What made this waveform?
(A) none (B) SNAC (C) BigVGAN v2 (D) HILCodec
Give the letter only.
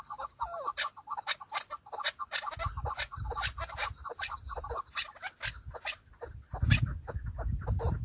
A